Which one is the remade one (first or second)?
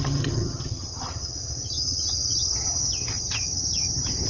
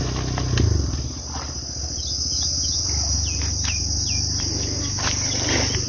first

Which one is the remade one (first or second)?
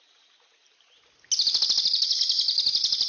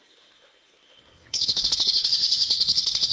second